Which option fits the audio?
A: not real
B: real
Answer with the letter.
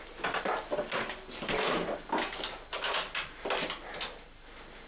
B